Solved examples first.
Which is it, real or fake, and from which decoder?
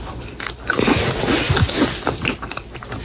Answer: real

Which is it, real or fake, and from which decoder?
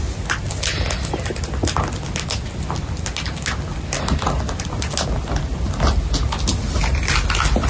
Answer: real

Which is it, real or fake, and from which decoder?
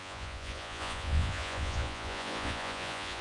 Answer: fake, vocoder, Vocos